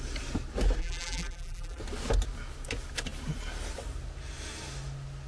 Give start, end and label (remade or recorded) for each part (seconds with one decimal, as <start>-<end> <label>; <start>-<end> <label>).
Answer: 0.0-0.8 recorded; 0.8-1.8 remade; 1.8-5.3 recorded